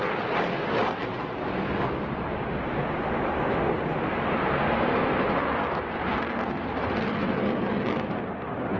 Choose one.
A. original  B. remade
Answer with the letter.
A